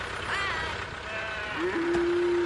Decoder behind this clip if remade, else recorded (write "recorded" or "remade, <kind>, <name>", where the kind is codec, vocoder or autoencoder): recorded